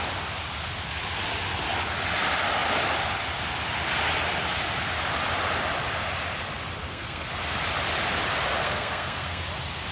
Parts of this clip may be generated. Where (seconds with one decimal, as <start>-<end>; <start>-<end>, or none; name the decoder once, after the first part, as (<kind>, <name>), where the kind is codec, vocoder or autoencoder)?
6.8-7.3 (codec, SNAC); 8.6-9.4